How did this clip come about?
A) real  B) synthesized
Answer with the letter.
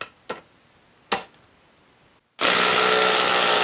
A